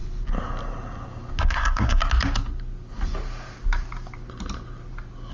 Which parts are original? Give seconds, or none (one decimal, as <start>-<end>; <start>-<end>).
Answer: 0.0-1.4; 2.0-5.3